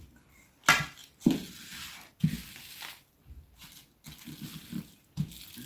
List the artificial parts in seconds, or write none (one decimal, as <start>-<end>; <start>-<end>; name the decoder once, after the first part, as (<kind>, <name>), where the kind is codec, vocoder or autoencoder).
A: none